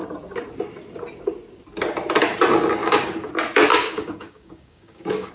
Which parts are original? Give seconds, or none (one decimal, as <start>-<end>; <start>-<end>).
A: 0.0-2.8; 3.3-3.7